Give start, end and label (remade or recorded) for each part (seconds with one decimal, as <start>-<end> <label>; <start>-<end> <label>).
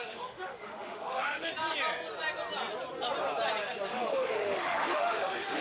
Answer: 0.0-1.5 remade; 1.5-4.1 recorded; 4.1-5.6 remade